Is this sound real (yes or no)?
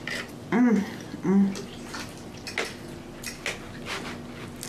yes